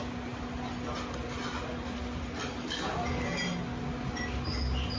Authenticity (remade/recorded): recorded